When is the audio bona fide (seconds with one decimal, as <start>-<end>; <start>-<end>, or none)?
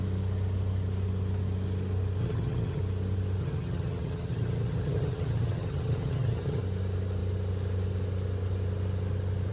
0.0-2.2; 2.8-3.4; 6.6-9.5